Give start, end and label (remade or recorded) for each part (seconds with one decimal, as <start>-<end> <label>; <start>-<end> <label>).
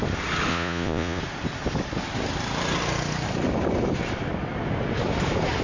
0.0-0.5 recorded; 0.5-1.2 remade; 1.2-5.6 recorded